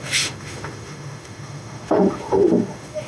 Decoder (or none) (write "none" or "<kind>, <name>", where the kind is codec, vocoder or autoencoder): autoencoder, DAC-VAE